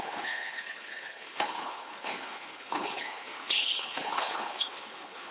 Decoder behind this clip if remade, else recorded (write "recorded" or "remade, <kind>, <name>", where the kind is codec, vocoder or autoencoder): remade, codec, HILCodec